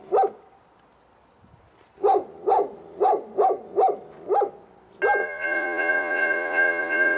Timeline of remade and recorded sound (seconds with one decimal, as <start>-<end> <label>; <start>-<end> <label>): 0.0-5.2 recorded; 5.2-7.2 remade